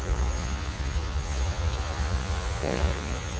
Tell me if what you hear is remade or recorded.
remade